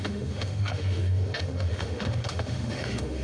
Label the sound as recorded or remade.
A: remade